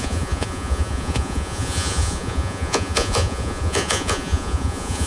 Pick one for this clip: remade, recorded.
remade